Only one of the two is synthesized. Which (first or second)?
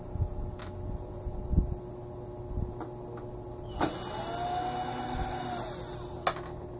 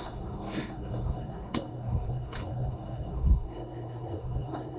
second